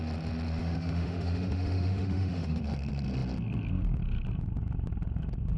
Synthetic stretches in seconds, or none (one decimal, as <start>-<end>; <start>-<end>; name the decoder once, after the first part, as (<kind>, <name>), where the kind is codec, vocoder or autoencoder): 0.6-2.6 (autoencoder, DAC-VAE)